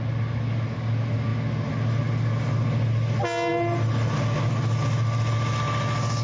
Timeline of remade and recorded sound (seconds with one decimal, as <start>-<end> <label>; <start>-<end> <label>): 0.0-6.2 recorded